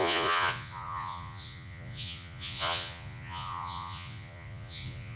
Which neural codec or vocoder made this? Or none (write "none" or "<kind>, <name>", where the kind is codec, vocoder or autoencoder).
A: vocoder, Vocos